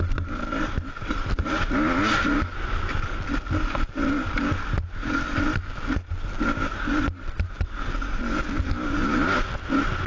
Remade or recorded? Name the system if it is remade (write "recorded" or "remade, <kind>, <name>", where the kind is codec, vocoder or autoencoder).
recorded